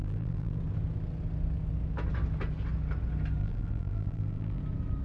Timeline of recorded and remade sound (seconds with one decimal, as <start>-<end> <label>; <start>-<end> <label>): 0.0-0.6 remade; 0.6-3.4 recorded; 3.4-4.6 remade; 4.6-5.0 recorded